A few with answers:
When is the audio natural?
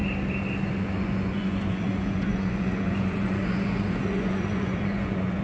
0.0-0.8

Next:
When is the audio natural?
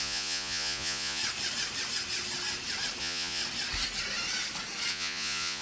1.2-3.0; 3.4-4.9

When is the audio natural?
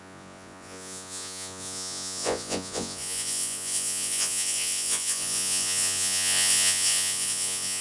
none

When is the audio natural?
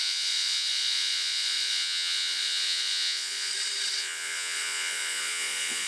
3.5-4.0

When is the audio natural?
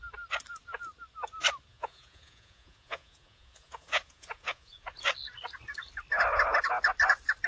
0.0-1.7; 4.9-7.5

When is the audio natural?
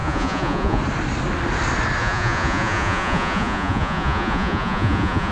0.8-2.0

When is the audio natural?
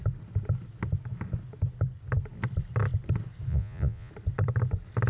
0.0-3.5; 4.1-5.1